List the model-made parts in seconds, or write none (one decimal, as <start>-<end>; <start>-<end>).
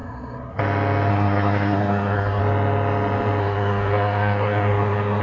0.0-0.6; 1.1-2.4; 3.4-5.2